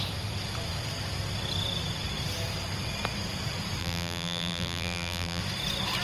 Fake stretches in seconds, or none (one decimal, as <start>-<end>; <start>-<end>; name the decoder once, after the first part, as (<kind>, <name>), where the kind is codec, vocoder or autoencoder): 3.8-5.4 (vocoder, BigVGAN v2)